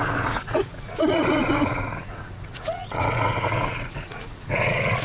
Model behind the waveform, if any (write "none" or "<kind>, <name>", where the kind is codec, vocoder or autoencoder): vocoder, Vocos